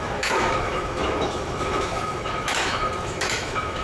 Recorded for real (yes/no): no